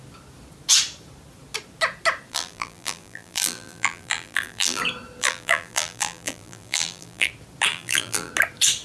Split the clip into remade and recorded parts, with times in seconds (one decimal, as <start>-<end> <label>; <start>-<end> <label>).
0.0-2.3 recorded; 2.3-4.8 remade; 4.8-5.2 recorded; 5.2-7.3 remade; 7.3-7.7 recorded; 7.7-8.3 remade; 8.3-8.8 recorded